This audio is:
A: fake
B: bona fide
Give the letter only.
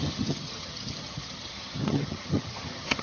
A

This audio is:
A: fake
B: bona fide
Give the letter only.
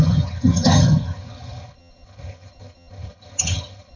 A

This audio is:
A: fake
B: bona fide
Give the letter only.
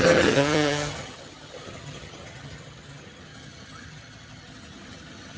A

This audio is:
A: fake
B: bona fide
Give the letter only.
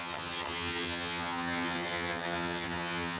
A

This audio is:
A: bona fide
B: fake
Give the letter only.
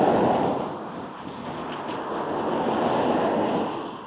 A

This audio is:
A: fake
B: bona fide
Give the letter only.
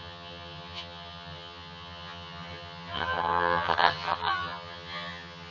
A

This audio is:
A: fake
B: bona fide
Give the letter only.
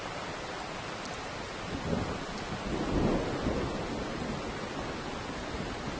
B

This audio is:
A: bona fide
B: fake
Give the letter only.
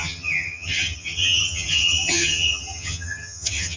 B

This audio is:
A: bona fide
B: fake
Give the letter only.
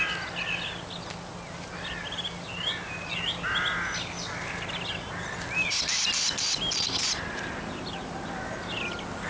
A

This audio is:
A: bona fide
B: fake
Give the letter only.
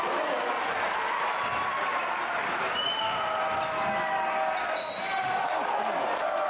A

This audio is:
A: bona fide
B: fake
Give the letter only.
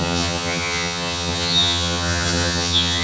B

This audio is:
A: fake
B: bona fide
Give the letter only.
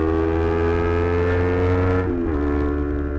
B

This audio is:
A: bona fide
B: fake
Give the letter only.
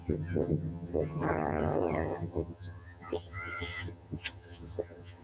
B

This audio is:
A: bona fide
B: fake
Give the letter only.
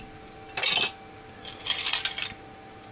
A